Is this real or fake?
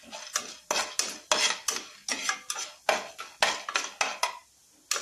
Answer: real